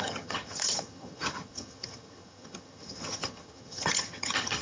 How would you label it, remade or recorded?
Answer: remade